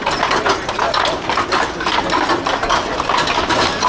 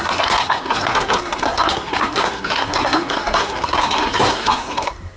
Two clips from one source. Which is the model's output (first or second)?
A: second